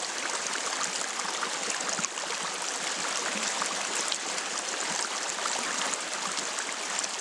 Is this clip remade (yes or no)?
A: no